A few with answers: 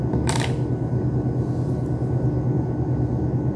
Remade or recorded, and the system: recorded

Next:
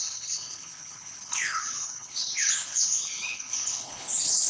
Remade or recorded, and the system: remade, codec, HILCodec